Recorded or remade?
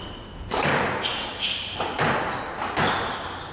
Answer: recorded